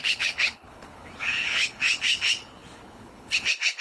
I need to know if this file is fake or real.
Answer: fake